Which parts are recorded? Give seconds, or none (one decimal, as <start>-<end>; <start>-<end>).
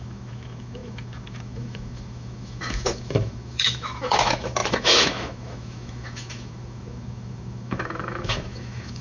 none